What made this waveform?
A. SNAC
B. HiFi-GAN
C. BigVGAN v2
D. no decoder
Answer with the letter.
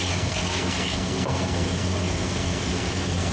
A